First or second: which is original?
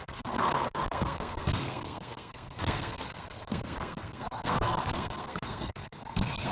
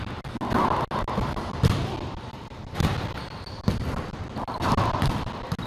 second